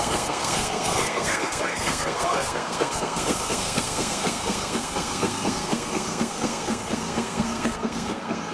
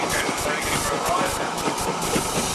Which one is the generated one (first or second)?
first